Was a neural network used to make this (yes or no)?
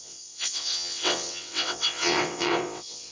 yes